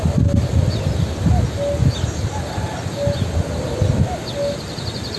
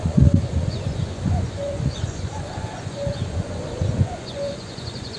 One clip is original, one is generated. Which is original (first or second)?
first